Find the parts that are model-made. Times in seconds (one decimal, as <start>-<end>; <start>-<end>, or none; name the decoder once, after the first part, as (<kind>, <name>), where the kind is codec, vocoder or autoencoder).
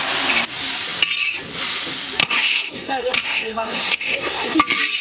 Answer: 2.2-4.6 (codec, SNAC)